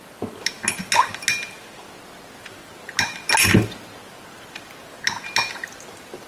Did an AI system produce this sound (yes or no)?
no